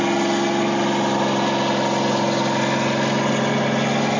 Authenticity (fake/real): real